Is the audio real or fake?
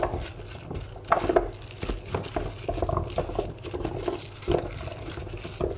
real